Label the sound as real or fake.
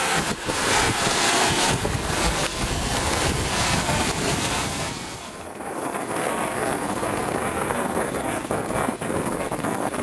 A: fake